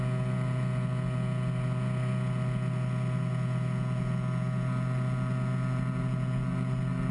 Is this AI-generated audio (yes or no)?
no